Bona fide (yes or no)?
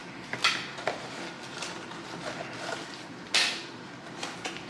yes